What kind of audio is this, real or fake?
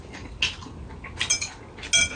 real